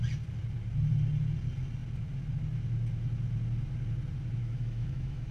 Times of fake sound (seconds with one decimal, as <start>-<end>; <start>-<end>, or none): 4.4-5.3